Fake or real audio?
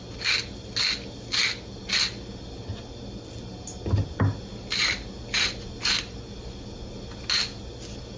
real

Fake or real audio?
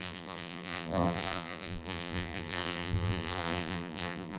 fake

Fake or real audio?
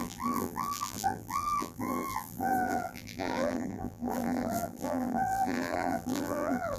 fake